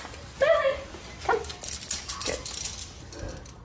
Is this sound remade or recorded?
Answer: recorded